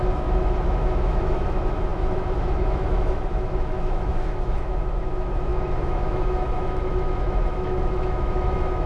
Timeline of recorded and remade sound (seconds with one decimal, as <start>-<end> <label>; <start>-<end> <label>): 0.0-8.9 remade